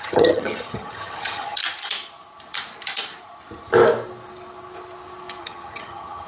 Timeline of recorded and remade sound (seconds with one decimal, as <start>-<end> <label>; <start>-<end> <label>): 0.0-1.6 remade; 1.6-5.4 recorded; 5.4-6.3 remade